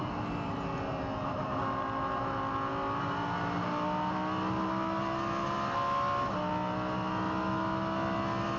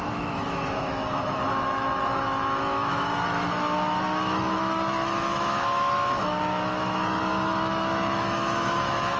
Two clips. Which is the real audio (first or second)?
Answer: first